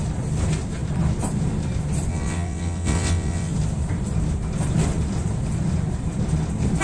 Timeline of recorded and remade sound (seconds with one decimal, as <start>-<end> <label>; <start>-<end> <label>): 0.0-2.1 recorded; 2.1-3.5 remade; 3.5-6.8 recorded